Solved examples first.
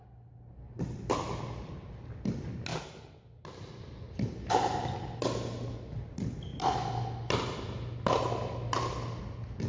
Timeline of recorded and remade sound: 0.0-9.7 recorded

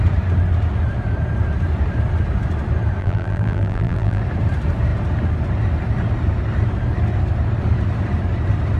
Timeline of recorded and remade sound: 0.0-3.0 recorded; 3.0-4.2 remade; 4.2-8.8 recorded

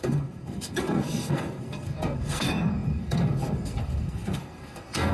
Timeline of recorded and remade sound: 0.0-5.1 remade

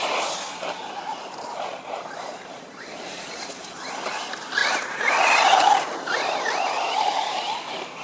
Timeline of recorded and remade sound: 0.0-8.0 remade

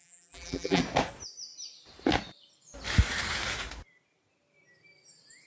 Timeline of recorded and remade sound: 0.0-0.8 remade; 0.8-5.5 recorded